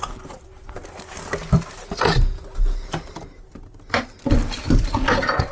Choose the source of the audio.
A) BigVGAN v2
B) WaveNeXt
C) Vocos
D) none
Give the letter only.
D